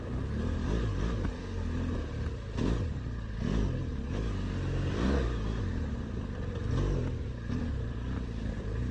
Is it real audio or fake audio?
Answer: real